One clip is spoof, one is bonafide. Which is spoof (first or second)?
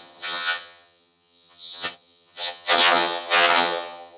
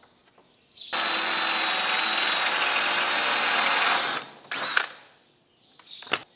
first